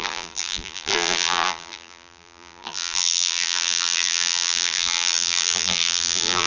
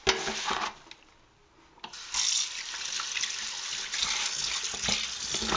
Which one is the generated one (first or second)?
first